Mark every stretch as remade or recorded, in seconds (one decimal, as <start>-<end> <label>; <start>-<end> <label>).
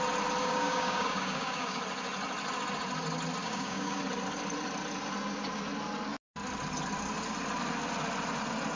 0.0-0.4 recorded; 0.4-1.8 remade; 1.8-3.4 recorded; 3.4-4.0 remade; 4.0-8.8 recorded